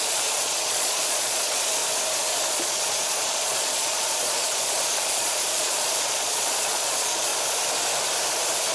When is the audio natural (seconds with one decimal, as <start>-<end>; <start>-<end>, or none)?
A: 1.8-2.5; 7.3-8.7